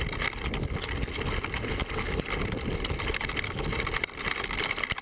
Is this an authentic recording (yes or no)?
yes